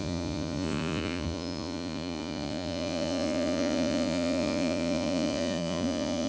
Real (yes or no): no